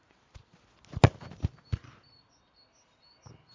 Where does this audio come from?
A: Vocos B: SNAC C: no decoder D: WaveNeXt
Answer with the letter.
C